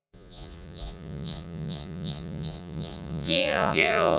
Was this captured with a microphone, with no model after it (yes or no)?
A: no